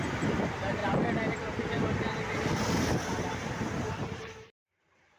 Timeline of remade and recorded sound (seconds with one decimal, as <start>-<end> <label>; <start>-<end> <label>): 0.0-0.8 remade; 0.8-3.9 recorded; 3.9-5.2 remade